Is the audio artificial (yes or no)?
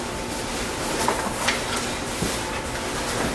no